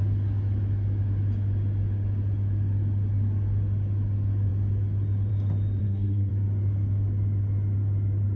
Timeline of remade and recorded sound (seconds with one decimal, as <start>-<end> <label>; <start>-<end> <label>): 0.0-5.8 recorded; 5.8-6.3 remade; 6.3-8.4 recorded

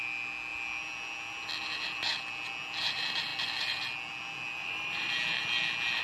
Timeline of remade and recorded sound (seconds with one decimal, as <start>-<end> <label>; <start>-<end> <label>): 0.0-4.6 recorded; 4.6-5.1 remade; 5.1-6.0 recorded

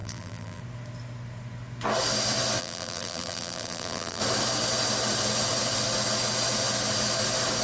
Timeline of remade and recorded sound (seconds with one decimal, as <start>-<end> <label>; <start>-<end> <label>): 0.0-0.6 remade; 0.6-2.6 recorded; 2.6-4.2 remade; 4.2-7.6 recorded